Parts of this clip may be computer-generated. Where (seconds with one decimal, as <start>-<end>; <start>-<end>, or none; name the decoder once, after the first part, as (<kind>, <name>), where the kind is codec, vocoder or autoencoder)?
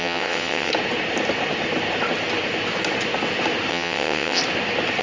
0.0-0.7 (vocoder, WaveNeXt); 3.7-4.4